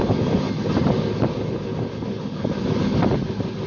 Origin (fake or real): real